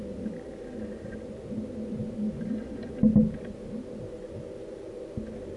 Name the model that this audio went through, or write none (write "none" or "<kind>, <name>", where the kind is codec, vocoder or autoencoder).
none